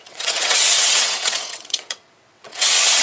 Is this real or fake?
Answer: fake